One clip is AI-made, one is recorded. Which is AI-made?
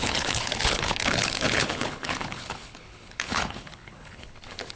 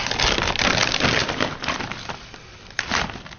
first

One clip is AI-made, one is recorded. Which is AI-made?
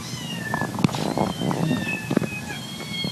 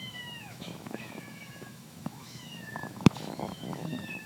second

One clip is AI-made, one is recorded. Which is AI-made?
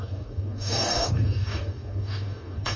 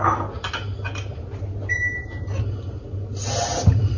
first